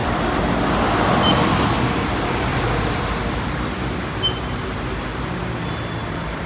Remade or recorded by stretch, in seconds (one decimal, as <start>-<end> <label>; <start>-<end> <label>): 0.0-0.7 remade; 0.7-2.5 recorded; 2.5-3.7 remade; 3.7-6.5 recorded

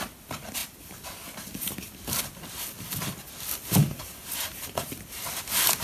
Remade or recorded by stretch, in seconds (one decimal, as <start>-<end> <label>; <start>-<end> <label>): 0.0-3.8 recorded; 3.8-4.9 remade; 4.9-5.8 recorded

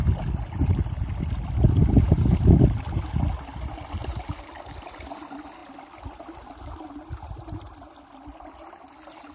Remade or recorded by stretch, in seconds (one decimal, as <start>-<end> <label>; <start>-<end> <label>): 0.0-5.6 recorded; 5.6-8.7 remade; 8.7-9.3 recorded